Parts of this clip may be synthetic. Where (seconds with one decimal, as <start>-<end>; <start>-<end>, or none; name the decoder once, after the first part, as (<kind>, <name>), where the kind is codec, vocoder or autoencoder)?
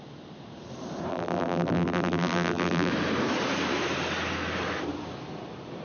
1.1-2.9 (vocoder, BigVGAN v2)